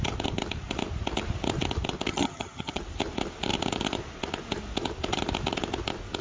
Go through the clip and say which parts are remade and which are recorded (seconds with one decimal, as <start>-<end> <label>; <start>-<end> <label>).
0.0-2.1 recorded; 2.1-2.8 remade; 2.8-6.2 recorded